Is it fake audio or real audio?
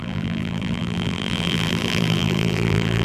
fake